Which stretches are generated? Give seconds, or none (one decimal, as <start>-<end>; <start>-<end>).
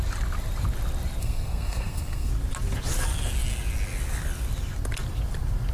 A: 1.2-2.3